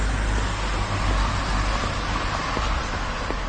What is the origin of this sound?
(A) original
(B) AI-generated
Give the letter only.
A